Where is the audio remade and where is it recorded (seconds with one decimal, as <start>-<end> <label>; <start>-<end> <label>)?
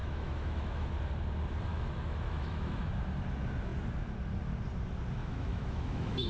0.0-0.9 remade; 0.9-1.7 recorded; 1.7-2.9 remade; 2.9-5.2 recorded; 5.2-6.3 remade